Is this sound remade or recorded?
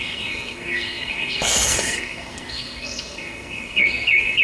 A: remade